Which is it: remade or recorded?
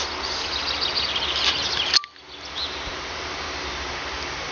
recorded